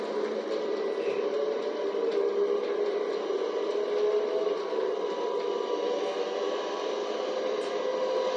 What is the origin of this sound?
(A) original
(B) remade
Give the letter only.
A